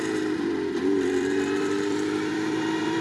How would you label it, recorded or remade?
remade